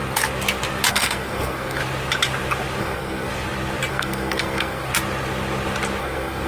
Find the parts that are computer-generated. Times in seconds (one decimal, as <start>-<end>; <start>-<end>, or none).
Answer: 0.9-1.8; 2.8-3.3; 3.9-4.9; 6.0-6.5